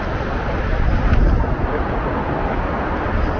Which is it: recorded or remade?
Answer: recorded